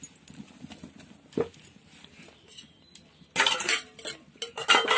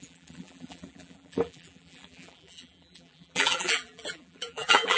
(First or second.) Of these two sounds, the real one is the first